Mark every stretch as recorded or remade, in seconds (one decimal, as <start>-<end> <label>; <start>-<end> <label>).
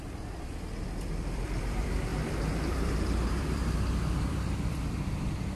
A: 0.0-5.6 remade